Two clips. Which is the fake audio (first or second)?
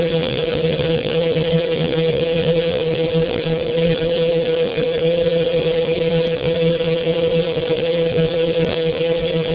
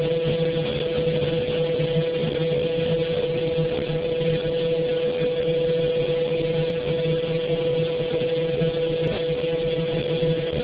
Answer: first